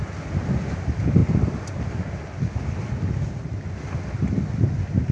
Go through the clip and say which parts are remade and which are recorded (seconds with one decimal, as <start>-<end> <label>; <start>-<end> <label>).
0.0-5.1 recorded